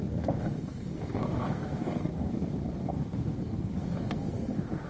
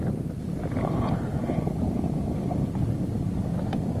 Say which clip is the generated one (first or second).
first